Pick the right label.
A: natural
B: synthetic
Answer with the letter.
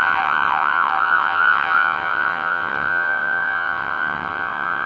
B